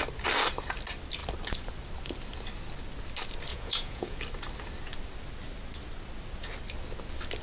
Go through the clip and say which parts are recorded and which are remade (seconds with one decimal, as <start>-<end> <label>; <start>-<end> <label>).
0.0-3.5 recorded; 3.5-4.2 remade; 4.2-7.4 recorded